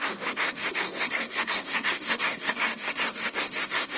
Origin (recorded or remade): remade